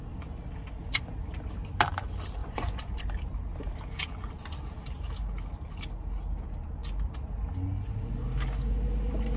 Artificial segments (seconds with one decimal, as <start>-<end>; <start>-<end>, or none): 2.4-3.0